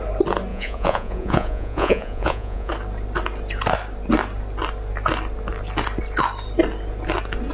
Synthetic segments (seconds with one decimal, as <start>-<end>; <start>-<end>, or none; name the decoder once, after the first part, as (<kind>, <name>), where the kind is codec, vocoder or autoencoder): 0.5-2.7 (vocoder, Vocos)